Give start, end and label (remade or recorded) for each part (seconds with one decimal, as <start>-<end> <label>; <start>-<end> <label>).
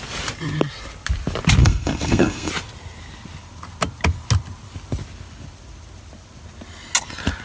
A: 0.0-1.6 recorded; 1.6-2.5 remade; 2.5-7.4 recorded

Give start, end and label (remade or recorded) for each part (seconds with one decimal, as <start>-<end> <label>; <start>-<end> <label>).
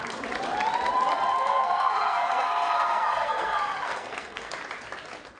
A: 0.0-1.3 recorded; 1.3-4.5 remade; 4.5-5.4 recorded